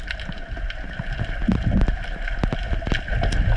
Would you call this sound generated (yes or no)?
no